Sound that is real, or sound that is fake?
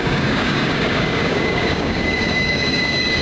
fake